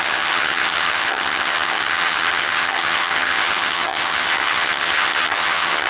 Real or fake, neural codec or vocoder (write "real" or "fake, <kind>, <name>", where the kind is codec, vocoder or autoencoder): fake, vocoder, HiFi-GAN